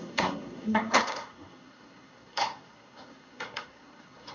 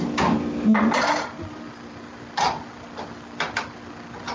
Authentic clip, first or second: second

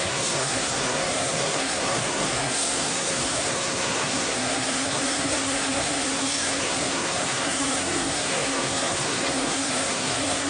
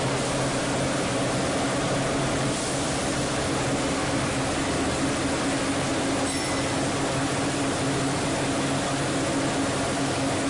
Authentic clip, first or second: second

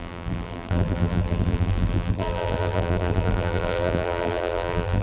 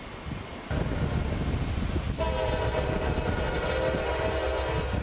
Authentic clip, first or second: second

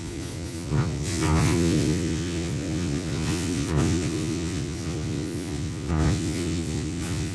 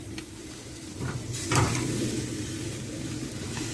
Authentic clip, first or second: second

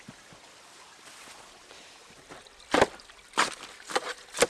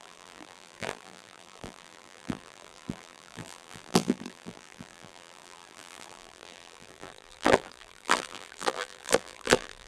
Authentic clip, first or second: first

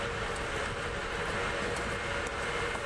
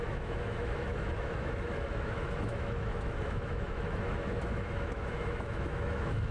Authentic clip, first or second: first